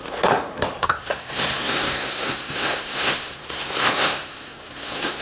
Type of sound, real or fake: fake